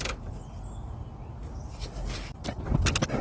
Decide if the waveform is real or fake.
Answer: real